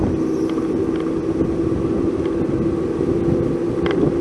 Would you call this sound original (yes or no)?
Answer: yes